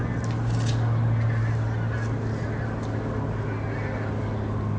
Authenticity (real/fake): real